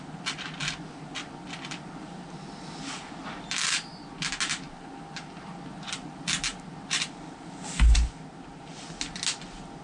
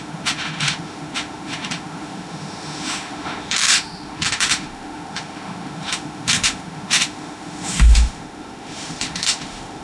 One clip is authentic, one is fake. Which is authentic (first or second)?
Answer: first